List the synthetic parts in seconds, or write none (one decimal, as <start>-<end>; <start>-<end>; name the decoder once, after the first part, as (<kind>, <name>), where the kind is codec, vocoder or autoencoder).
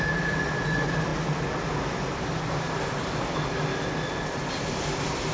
none